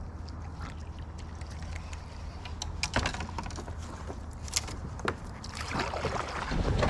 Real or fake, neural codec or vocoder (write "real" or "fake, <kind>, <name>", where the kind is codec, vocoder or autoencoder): real